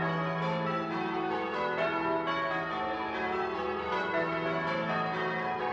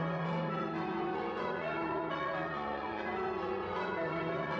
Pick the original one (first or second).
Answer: first